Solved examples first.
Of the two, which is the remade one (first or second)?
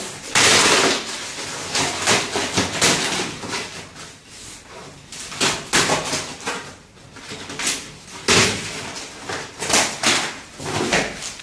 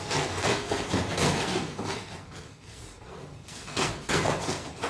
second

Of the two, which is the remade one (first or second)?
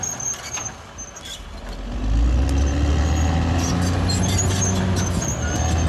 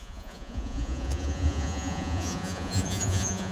second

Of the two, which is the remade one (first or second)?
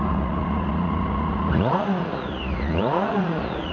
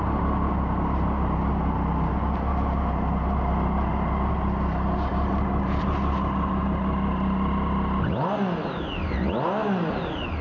first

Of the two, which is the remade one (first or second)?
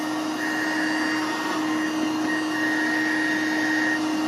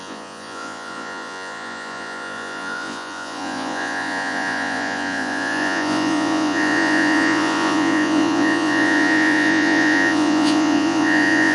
second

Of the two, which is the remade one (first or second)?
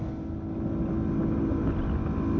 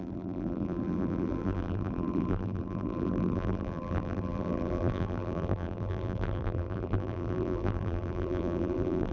second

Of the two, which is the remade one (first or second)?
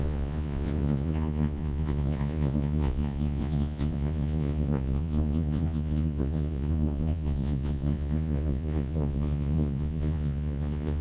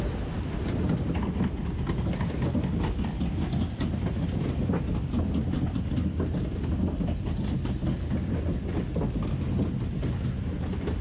first